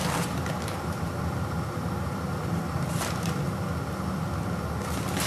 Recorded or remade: recorded